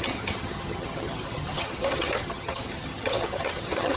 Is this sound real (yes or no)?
no